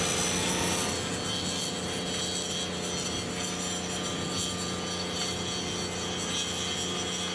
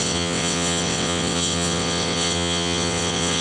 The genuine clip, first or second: first